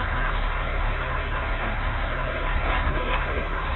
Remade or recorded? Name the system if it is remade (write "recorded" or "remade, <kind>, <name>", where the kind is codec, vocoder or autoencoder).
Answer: remade, codec, SNAC